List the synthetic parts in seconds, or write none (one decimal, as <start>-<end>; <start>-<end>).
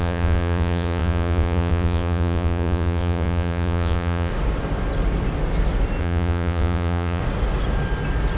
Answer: 0.0-4.3; 6.0-7.2